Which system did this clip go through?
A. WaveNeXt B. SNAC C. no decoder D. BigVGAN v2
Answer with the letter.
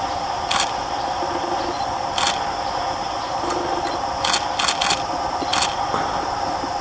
C